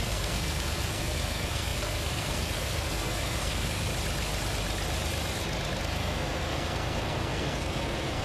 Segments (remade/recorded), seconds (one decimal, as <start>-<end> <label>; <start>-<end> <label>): 0.0-3.9 remade; 3.9-5.8 recorded; 5.8-8.2 remade